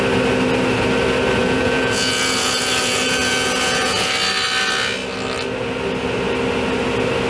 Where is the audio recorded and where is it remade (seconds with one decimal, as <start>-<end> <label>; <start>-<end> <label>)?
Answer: 0.0-1.4 recorded; 1.4-4.1 remade; 4.1-7.3 recorded